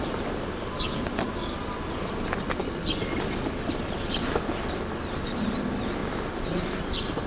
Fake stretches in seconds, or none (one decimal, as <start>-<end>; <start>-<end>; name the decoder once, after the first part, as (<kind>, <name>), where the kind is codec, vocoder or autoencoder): none